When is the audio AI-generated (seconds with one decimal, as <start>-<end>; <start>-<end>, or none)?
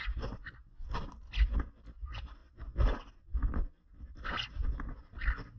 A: 2.4-5.1